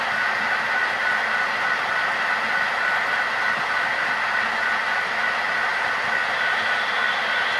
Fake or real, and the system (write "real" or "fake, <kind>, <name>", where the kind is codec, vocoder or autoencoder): real